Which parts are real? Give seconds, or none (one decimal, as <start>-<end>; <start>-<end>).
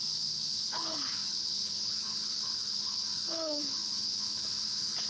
none